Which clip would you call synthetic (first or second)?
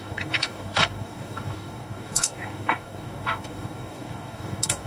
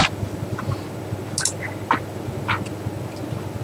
first